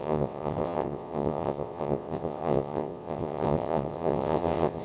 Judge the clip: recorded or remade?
remade